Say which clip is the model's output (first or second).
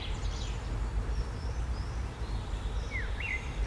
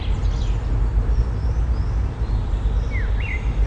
first